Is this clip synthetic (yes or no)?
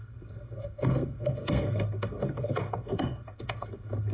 yes